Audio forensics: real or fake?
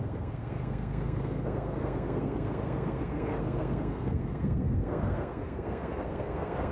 fake